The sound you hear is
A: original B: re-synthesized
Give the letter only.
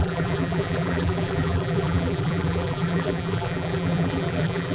B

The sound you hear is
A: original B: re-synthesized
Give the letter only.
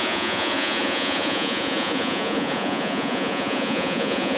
B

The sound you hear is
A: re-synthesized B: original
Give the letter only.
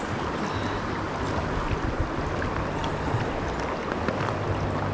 B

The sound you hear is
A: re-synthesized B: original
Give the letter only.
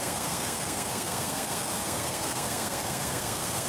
A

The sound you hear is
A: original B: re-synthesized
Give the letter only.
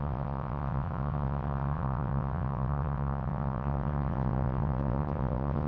B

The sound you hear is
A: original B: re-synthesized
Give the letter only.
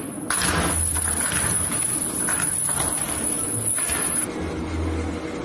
A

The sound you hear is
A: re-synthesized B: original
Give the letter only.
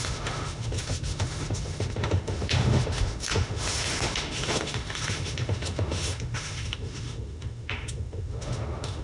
A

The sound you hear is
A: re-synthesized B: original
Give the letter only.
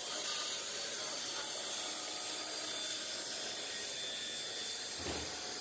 B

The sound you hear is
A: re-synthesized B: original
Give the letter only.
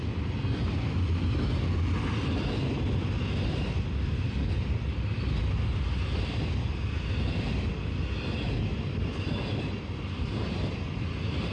B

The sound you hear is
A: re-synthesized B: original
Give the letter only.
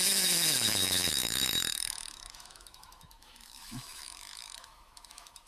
A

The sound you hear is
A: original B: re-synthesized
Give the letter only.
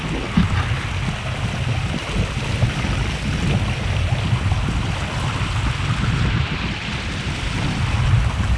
A